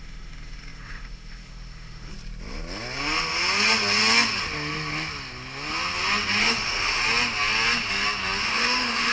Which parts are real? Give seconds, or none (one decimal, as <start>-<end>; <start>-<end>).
2.1-6.4; 7.0-8.4